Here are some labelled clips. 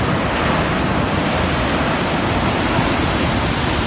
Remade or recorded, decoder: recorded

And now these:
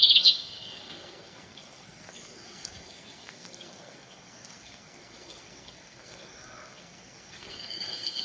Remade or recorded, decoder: remade, codec, SNAC